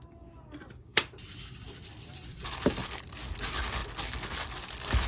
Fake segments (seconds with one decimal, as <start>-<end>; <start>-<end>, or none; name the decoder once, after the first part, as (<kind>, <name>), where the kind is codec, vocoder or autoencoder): 0.9-2.8 (vocoder, BigVGAN v2)